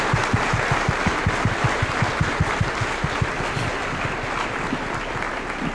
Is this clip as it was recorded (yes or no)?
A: yes